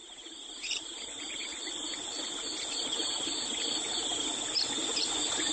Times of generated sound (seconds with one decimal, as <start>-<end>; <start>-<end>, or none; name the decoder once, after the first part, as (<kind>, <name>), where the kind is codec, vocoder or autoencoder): none